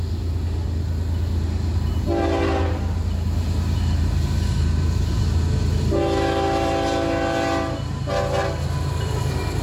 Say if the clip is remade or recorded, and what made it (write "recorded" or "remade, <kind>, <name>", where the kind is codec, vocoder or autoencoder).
recorded